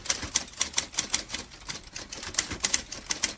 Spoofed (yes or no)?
no